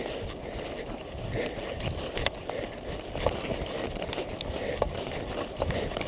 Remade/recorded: recorded